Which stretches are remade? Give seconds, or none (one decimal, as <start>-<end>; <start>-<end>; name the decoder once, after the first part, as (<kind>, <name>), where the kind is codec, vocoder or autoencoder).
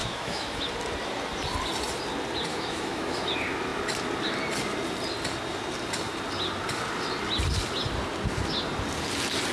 0.0-0.6 (autoencoder, DAC-VAE); 2.5-3.3